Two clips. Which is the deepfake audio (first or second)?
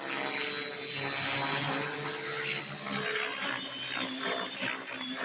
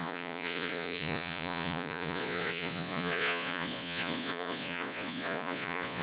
second